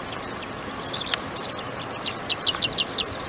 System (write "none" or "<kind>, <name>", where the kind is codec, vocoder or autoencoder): none